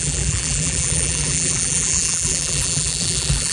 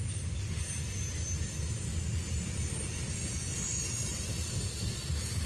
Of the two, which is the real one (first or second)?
second